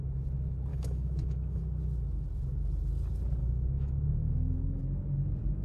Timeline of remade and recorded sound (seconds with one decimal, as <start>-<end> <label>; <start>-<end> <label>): 0.0-0.7 recorded; 0.7-1.6 remade; 1.6-3.4 recorded; 3.4-4.8 remade; 4.8-5.6 recorded